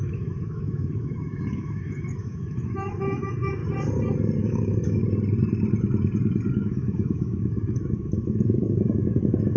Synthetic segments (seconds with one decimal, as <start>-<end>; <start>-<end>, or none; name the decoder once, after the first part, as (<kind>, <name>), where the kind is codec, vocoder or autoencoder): 0.0-3.6 (autoencoder, DAC-VAE); 4.4-5.0; 6.6-9.6